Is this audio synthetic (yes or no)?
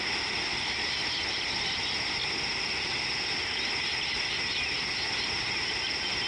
no